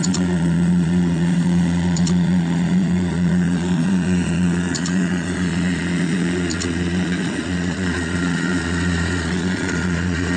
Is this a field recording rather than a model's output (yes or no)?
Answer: no